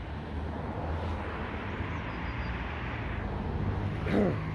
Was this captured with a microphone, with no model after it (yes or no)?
yes